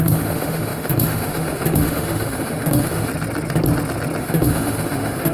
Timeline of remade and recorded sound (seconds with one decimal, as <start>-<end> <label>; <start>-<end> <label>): 0.0-3.1 remade; 3.1-4.2 recorded; 4.2-5.3 remade